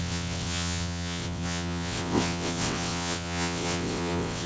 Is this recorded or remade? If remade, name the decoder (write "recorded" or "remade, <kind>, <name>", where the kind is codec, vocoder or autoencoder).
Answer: remade, vocoder, WaveNeXt